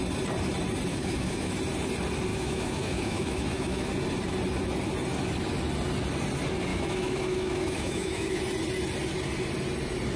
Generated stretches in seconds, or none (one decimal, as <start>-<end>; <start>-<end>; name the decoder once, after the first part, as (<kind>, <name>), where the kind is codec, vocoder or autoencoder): 0.9-1.5 (autoencoder, DAC-VAE); 2.3-3.9; 6.7-8.4